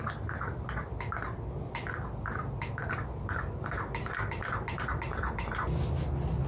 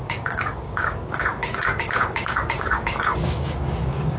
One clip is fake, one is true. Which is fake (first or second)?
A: second